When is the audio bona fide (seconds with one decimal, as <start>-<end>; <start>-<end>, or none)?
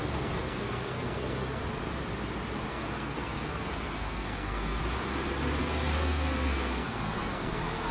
1.6-2.7; 4.8-5.6